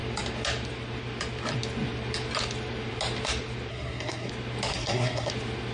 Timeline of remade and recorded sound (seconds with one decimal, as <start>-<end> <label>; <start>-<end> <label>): 0.0-3.7 recorded; 3.7-4.3 remade; 4.3-4.7 recorded; 4.7-5.3 remade; 5.3-5.7 recorded